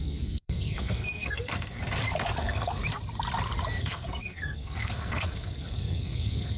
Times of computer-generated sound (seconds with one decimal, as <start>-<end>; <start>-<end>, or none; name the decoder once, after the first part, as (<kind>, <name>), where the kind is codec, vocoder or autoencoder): 0.0-1.8 (codec, SNAC); 2.4-2.8; 3.8-6.6